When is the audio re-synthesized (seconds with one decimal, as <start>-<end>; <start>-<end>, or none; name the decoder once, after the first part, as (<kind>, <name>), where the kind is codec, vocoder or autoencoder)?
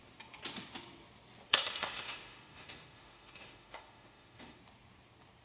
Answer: 1.5-4.6 (autoencoder, DAC-VAE)